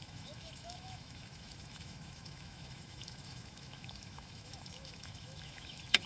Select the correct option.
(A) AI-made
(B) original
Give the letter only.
A